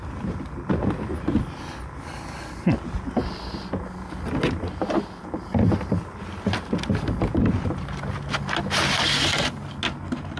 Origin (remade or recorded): recorded